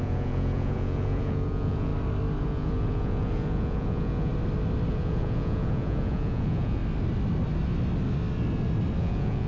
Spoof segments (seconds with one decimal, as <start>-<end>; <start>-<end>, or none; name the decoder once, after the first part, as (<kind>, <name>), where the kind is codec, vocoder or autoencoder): 0.0-1.9 (vocoder, Vocos); 2.4-4.3; 4.9-6.8; 9.0-9.5